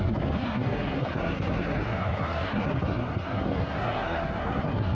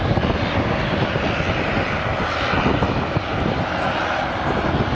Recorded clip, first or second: second